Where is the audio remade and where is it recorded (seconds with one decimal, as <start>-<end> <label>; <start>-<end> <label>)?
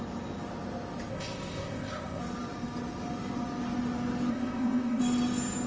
0.0-1.1 recorded; 1.1-2.2 remade; 2.2-4.3 recorded; 4.3-5.0 remade; 5.0-5.7 recorded